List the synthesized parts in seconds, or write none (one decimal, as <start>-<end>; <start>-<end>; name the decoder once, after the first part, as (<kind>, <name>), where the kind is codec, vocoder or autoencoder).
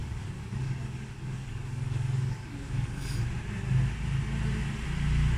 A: 0.0-3.2 (codec, DAC)